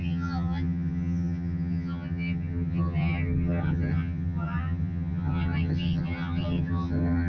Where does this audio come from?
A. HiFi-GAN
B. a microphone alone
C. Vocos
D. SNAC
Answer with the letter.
A